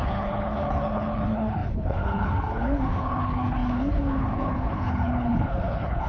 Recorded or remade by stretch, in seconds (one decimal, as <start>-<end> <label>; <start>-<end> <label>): 0.0-6.1 remade